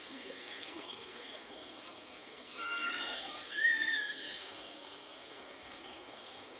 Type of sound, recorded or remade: remade